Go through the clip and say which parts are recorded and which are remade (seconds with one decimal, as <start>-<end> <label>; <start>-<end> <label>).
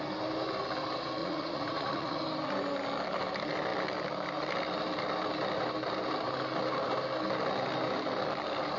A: 0.0-1.2 recorded; 1.2-2.2 remade; 2.2-8.8 recorded